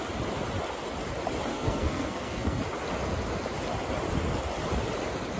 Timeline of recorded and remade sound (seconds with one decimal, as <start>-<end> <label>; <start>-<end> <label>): 0.0-1.5 recorded; 1.5-2.6 remade; 2.6-5.4 recorded